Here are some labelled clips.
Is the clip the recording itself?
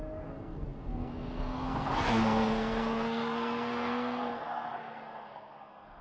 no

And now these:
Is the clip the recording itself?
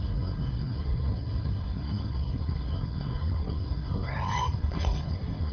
no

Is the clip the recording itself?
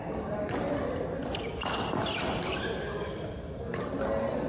yes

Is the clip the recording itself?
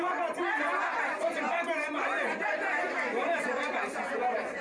yes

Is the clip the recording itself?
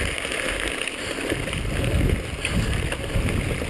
yes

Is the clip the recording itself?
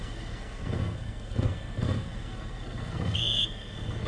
no